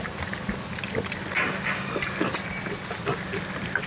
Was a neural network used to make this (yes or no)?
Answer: no